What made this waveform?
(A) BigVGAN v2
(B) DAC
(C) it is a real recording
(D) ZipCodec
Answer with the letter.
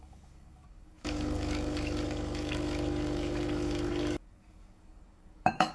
B